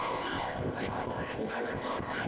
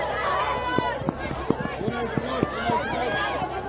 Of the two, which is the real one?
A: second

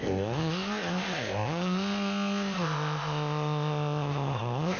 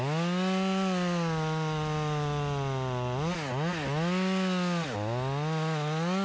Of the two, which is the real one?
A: second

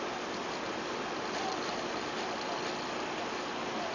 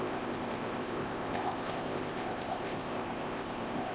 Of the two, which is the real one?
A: first